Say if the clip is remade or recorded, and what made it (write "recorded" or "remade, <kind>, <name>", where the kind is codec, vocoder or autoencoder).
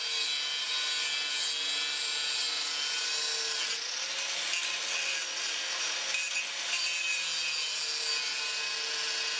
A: recorded